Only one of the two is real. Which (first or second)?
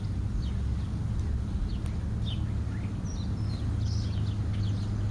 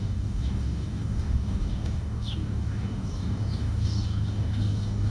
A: first